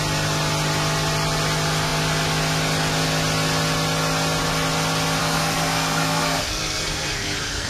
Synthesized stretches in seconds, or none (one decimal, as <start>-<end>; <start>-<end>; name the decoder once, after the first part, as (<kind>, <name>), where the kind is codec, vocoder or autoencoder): 5.2-7.7 (codec, SNAC)